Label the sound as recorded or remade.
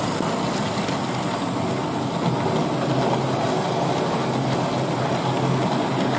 recorded